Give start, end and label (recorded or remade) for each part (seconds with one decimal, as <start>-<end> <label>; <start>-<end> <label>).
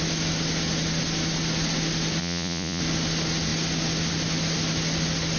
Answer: 0.0-2.2 recorded; 2.2-2.8 remade; 2.8-5.4 recorded